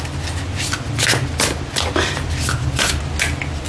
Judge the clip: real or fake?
real